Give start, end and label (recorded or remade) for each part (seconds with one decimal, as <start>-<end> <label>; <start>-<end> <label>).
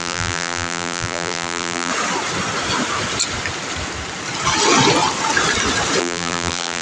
0.0-1.9 remade; 1.9-6.0 recorded; 6.0-6.8 remade